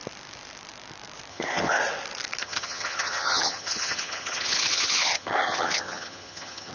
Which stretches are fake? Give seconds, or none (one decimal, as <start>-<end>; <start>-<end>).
1.3-1.8; 2.4-6.7